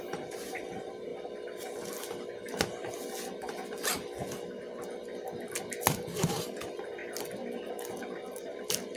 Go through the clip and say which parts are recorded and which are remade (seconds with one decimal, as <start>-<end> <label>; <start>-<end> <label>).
0.0-1.1 remade; 1.1-6.3 recorded; 6.3-7.0 remade; 7.0-8.0 recorded; 8.0-9.0 remade